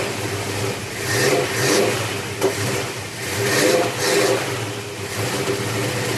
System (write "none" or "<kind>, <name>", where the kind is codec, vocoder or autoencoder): none